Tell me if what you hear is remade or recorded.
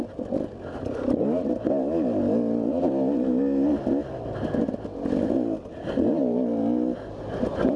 recorded